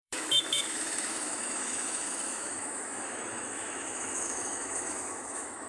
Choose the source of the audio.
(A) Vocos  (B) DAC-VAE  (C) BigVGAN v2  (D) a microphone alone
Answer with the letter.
B